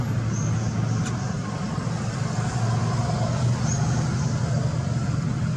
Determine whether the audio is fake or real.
real